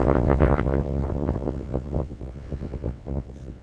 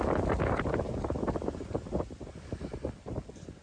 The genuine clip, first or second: second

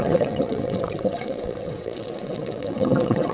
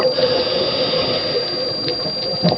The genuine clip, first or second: second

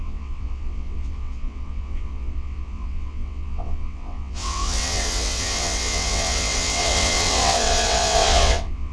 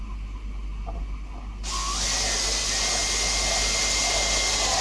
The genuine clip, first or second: second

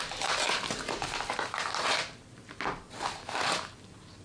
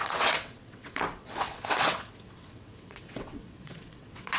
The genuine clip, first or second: first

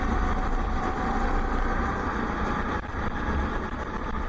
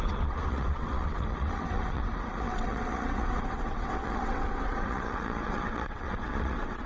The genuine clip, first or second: first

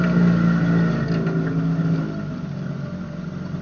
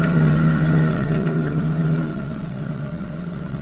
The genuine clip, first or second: first